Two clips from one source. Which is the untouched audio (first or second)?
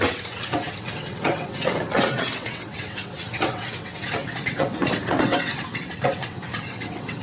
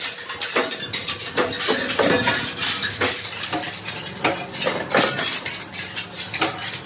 second